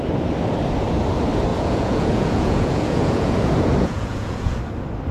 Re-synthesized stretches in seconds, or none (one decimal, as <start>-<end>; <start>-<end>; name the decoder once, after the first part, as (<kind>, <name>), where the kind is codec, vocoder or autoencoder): 1.5-4.6 (vocoder, Vocos)